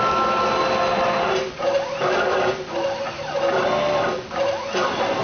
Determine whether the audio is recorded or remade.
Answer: remade